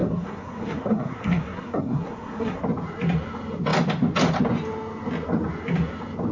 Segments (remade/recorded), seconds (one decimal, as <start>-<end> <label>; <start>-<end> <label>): 0.0-2.6 remade; 2.6-6.3 recorded